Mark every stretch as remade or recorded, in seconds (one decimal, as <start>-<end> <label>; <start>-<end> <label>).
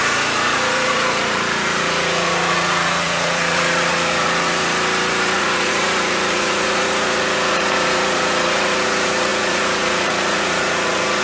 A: 0.0-11.2 remade